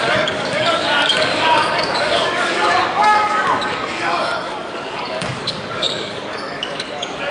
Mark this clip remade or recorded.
remade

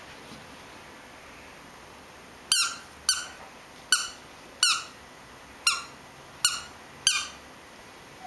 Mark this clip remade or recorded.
recorded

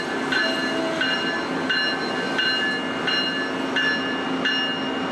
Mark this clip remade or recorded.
recorded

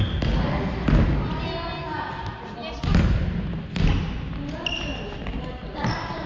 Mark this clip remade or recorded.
recorded